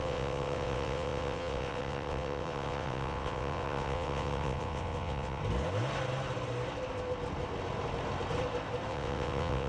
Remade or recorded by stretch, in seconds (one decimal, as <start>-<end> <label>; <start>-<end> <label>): 0.0-5.4 remade; 5.4-8.9 recorded; 8.9-9.7 remade